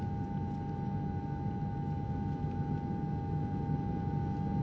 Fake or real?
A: real